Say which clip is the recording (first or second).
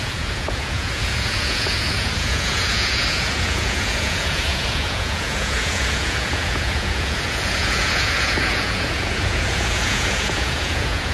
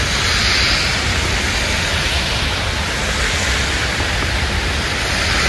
second